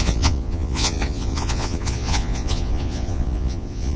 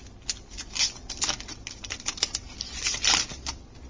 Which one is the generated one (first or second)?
first